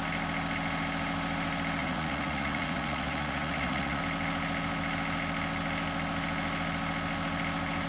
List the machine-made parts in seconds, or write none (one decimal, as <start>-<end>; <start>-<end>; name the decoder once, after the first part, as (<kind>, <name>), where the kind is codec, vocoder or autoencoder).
1.8-4.0 (vocoder, Vocos)